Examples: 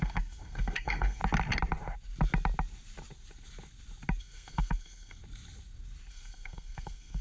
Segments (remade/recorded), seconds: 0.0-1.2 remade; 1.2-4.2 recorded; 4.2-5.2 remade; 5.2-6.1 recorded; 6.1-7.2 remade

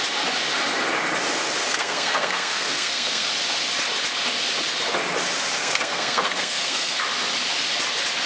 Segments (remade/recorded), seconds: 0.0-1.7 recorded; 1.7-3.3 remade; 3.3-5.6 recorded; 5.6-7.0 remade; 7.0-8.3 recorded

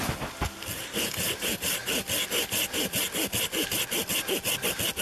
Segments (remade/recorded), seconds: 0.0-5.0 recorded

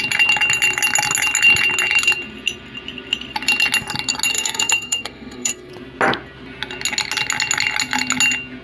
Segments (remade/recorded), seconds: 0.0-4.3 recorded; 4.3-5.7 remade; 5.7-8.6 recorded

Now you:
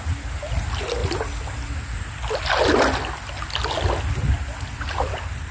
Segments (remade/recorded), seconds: 0.0-5.5 recorded

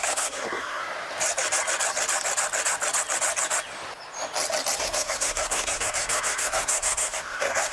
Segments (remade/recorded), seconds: 0.0-0.8 remade; 0.8-4.8 recorded; 4.8-7.7 remade